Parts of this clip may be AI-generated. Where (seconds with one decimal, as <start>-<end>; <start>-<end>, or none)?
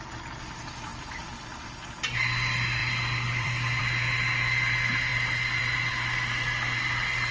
0.9-1.4; 2.8-3.8; 5.1-5.6